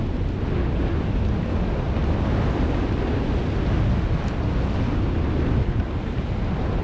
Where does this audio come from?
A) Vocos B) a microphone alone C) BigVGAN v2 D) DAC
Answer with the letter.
B